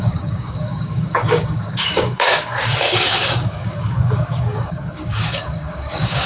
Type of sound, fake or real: fake